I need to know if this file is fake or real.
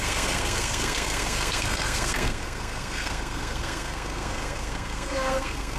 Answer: fake